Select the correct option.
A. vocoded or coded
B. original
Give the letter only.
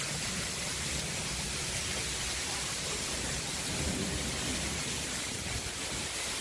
A